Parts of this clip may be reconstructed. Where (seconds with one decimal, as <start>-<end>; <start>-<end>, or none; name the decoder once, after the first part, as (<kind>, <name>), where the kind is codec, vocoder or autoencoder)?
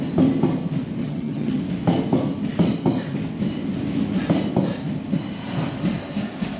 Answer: 1.0-1.6 (vocoder, HiFi-GAN)